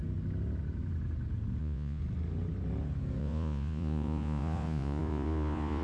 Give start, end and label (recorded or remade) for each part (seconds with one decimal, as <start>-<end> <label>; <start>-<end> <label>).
0.0-1.6 recorded; 1.6-2.0 remade; 2.0-3.2 recorded; 3.2-5.8 remade